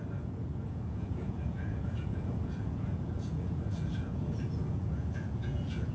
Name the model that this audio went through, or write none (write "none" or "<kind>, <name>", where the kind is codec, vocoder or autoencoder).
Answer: vocoder, Vocos